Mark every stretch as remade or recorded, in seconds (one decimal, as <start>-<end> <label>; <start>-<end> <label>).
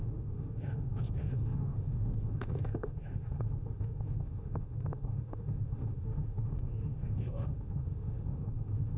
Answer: 0.0-9.0 remade